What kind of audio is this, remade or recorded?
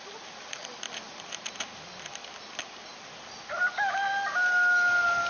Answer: recorded